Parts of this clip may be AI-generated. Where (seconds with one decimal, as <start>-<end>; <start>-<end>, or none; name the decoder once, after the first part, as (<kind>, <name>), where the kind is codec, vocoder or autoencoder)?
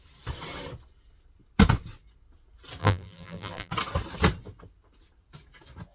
2.8-3.7 (vocoder, BigVGAN v2)